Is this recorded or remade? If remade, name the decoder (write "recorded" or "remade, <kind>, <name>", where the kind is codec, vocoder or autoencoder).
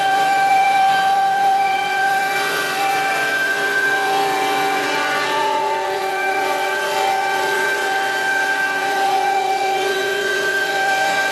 remade, vocoder, Vocos